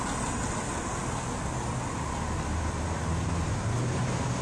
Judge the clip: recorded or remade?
recorded